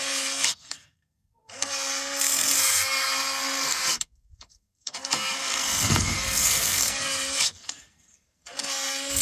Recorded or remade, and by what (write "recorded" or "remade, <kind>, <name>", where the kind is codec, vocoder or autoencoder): remade, codec, SNAC